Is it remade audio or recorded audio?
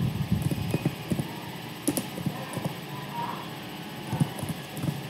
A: recorded